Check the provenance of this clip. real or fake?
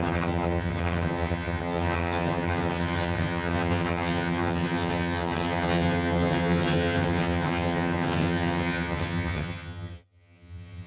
fake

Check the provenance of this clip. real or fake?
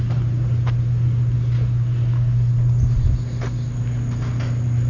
real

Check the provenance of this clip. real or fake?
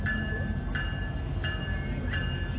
real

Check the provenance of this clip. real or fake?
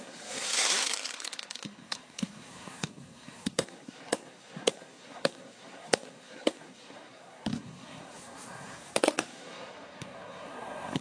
fake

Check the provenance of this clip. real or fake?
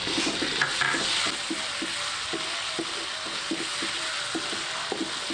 real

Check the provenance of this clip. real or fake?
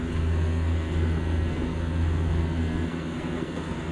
fake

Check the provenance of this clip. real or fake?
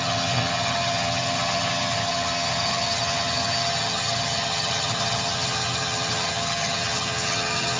fake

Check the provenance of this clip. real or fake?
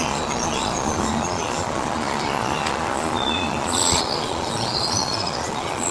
fake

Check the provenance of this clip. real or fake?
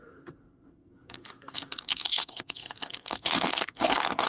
fake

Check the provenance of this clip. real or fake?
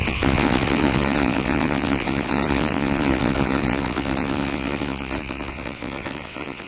fake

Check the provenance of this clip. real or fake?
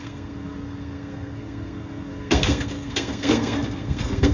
fake